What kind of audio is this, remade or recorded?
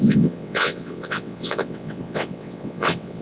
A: remade